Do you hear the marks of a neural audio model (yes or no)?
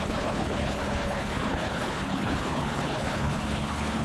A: yes